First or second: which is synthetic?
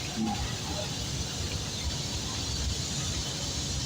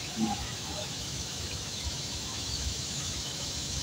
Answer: second